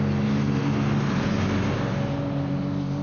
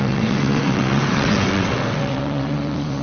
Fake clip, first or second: second